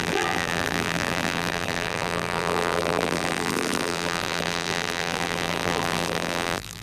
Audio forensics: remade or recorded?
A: remade